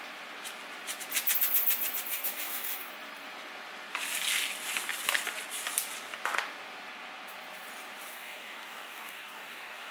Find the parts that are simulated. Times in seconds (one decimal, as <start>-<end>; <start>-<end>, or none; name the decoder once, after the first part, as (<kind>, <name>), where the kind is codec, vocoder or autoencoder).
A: 2.1-2.9 (codec, DAC); 8.1-9.9

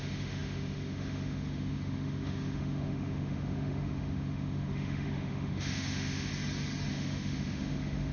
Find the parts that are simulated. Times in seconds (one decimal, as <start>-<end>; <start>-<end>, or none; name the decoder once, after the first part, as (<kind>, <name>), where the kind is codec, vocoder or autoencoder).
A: 0.0-6.3 (autoencoder, DAC-VAE); 6.9-8.1

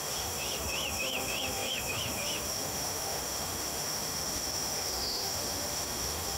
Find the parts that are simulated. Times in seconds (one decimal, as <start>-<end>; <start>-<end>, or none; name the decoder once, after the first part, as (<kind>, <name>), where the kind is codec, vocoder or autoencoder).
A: 0.0-6.4 (autoencoder, DAC-VAE)

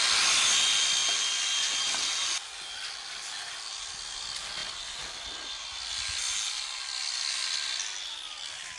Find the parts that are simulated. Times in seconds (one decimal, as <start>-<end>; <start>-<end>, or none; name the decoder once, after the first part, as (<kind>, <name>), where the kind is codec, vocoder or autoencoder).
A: none

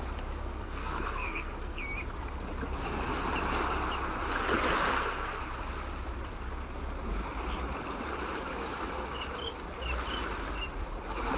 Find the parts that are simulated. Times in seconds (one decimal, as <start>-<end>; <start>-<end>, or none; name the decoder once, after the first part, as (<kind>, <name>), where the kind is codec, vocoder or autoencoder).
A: 0.4-1.8 (codec, SNAC); 4.9-5.4

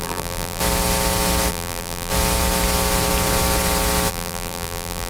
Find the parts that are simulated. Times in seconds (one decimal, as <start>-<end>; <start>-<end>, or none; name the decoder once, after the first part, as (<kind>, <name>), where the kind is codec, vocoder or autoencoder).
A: 0.0-0.6 (vocoder, BigVGAN v2); 1.5-2.1; 4.1-5.1

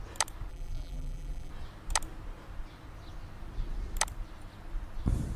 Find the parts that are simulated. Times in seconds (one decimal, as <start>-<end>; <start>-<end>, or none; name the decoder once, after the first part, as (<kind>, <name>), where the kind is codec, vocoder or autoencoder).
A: 0.5-1.5 (vocoder, BigVGAN v2)

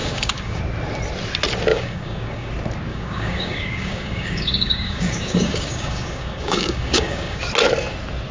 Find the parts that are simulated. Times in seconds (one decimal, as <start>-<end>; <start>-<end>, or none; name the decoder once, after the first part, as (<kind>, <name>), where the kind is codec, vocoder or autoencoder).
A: 0.0-0.6 (codec, DAC); 1.7-2.5; 2.9-7.4